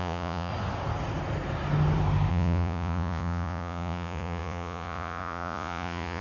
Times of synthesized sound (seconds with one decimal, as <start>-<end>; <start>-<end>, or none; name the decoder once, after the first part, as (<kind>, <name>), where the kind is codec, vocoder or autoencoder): 0.0-0.5 (vocoder, Vocos); 2.3-6.2